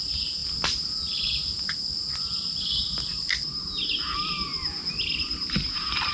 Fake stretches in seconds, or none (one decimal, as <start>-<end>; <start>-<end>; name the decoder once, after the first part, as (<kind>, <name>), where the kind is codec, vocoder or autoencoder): none